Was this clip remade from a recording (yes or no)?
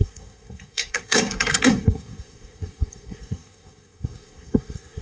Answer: yes